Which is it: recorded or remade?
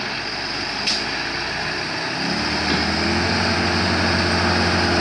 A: recorded